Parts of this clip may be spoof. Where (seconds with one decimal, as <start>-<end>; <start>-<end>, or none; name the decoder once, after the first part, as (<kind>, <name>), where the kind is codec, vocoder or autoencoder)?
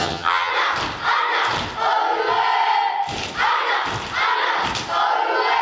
0.0-0.5 (vocoder, HiFi-GAN)